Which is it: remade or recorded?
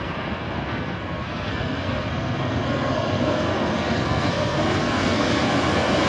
remade